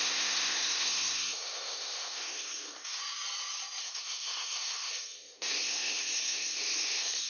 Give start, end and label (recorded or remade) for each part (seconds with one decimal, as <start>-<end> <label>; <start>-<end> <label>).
0.0-3.0 remade; 3.0-3.8 recorded; 3.8-7.3 remade